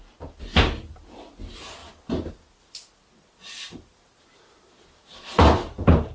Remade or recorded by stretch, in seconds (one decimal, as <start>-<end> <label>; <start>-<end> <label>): 0.0-6.1 recorded